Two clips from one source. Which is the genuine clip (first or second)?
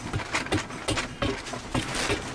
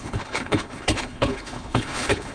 first